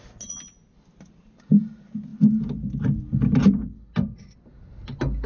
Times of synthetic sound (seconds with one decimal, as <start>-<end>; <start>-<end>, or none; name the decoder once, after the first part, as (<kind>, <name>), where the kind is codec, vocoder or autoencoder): none